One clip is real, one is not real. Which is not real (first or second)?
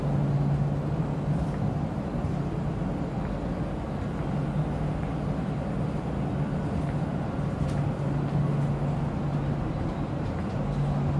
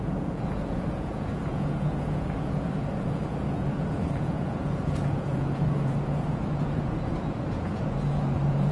second